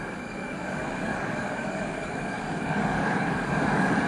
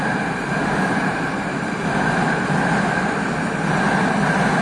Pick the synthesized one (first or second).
first